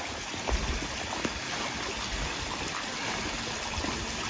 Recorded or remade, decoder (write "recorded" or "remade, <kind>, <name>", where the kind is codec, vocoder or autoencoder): recorded